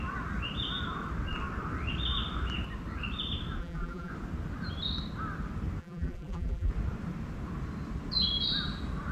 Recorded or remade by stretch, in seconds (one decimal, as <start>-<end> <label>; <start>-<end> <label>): 0.0-3.6 recorded; 3.6-4.1 remade; 4.1-5.8 recorded; 5.8-6.7 remade; 6.7-9.1 recorded